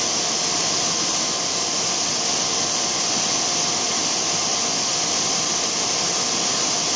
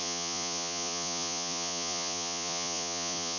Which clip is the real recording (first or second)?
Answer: first